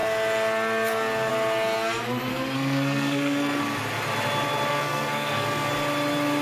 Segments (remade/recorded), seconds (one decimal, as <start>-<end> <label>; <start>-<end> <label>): 0.0-2.3 recorded; 2.3-3.6 remade; 3.6-4.7 recorded; 4.7-5.7 remade; 5.7-6.4 recorded